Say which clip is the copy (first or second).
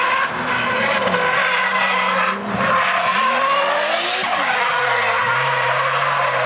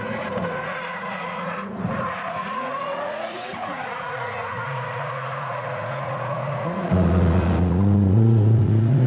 second